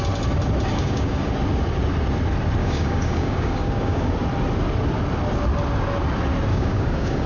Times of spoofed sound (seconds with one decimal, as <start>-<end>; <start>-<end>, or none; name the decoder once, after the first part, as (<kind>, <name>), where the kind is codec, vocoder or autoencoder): 0.7-1.3 (codec, DAC); 2.6-4.1; 6.5-7.3

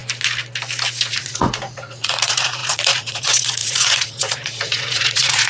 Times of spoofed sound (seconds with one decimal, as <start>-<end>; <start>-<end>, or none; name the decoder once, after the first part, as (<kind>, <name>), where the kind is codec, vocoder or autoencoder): 1.1-5.5 (vocoder, Vocos)